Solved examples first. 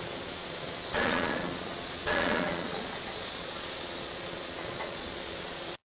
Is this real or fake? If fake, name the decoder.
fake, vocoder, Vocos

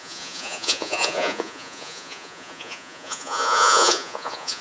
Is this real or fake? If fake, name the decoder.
fake, vocoder, Vocos